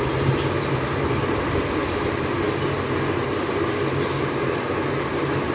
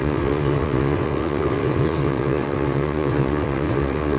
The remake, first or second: second